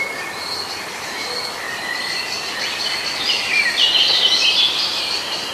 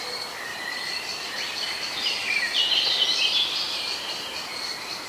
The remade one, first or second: second